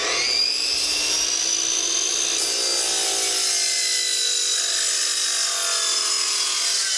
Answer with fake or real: real